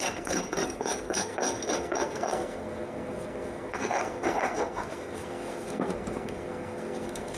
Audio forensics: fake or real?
fake